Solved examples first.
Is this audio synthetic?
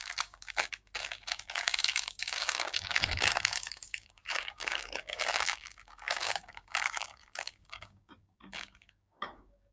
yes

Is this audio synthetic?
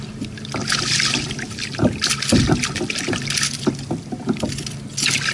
no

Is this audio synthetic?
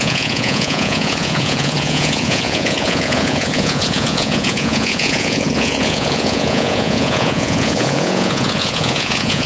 yes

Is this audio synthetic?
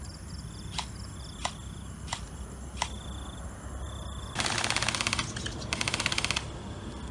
no